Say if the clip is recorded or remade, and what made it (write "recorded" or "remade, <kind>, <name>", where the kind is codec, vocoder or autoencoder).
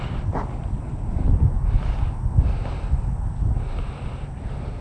recorded